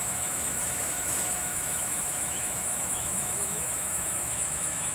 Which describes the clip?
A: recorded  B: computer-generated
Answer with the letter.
B